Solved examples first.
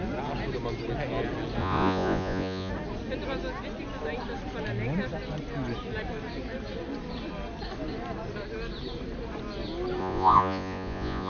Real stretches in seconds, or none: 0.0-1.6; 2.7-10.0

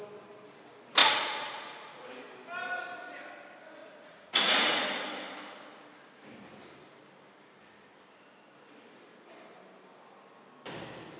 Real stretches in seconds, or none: 0.0-1.0; 2.1-3.8; 4.8-11.2